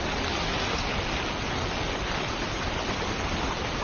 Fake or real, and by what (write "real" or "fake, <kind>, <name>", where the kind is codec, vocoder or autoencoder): real